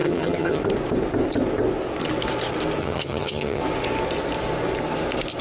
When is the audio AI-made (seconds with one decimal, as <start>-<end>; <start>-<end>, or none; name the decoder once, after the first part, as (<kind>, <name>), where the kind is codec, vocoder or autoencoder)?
0.0-0.6 (vocoder, HiFi-GAN); 2.8-3.6